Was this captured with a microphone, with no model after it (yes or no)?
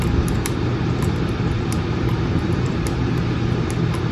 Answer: no